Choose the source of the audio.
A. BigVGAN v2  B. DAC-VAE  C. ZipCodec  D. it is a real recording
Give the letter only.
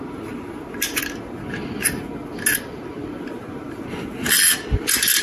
D